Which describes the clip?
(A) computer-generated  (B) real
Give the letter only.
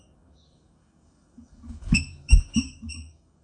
A